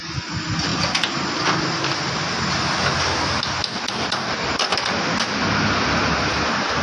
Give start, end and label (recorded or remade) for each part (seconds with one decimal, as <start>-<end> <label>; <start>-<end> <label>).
0.0-2.9 recorded; 2.9-5.2 remade; 5.2-6.8 recorded